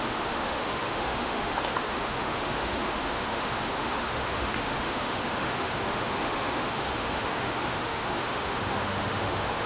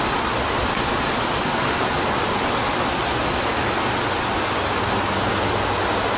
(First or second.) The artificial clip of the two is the first